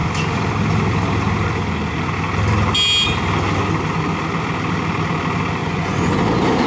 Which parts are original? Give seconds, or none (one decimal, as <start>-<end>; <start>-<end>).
0.0-5.6; 6.1-6.7